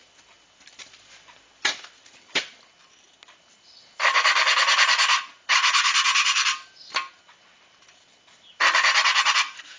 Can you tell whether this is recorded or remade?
recorded